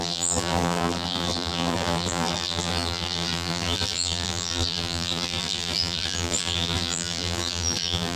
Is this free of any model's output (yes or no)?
no